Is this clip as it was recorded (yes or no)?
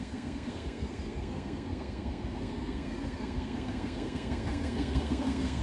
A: no